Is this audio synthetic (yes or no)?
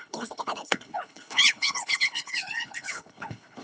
yes